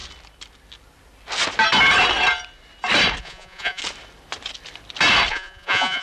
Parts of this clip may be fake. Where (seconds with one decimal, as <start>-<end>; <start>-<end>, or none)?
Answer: 3.2-3.8; 5.3-6.0